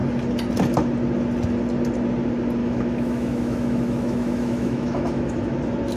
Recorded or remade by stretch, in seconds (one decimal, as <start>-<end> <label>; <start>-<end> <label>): 0.0-2.6 recorded; 2.6-5.6 remade; 5.6-6.0 recorded

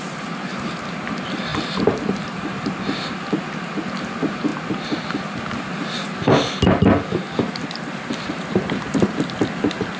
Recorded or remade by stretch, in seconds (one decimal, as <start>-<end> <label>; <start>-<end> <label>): 0.0-10.0 recorded

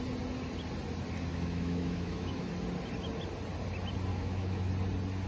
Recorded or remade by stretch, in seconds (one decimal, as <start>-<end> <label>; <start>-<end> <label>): 0.0-1.3 recorded; 1.3-2.5 remade; 2.5-4.1 recorded; 4.1-4.7 remade; 4.7-5.3 recorded